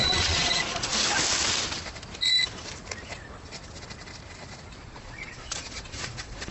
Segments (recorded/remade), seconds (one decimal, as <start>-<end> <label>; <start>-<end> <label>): 0.0-0.9 remade; 0.9-4.8 recorded; 4.8-6.5 remade